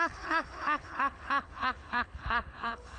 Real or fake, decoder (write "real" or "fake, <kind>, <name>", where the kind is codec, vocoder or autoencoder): fake, codec, HILCodec